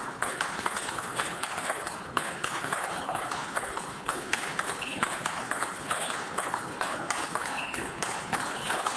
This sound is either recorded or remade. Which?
remade